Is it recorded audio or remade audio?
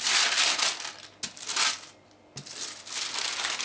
recorded